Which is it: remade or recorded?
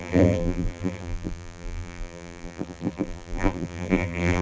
remade